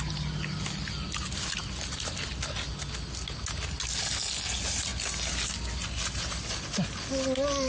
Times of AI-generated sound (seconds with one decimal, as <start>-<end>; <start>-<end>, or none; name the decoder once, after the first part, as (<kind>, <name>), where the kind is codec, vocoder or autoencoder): none